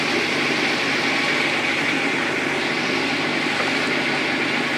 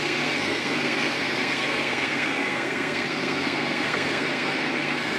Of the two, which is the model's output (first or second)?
second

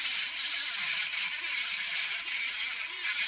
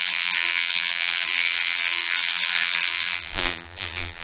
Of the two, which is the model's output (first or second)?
second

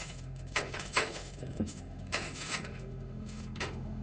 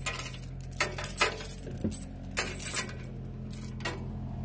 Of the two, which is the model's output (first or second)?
first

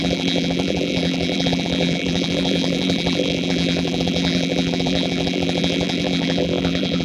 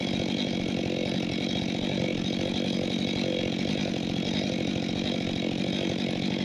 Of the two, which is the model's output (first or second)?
first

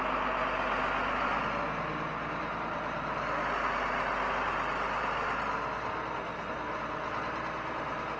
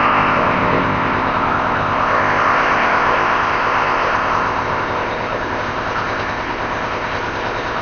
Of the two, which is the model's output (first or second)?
second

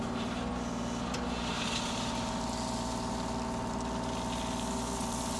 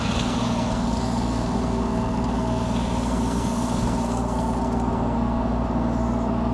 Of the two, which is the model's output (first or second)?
second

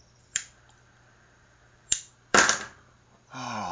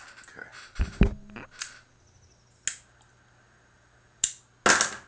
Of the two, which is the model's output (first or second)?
first